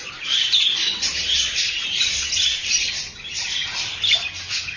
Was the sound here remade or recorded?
recorded